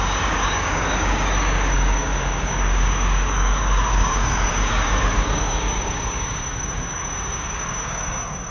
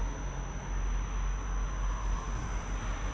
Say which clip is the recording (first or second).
second